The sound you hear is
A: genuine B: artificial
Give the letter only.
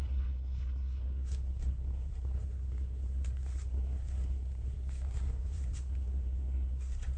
B